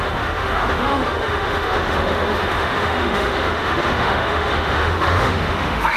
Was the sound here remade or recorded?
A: remade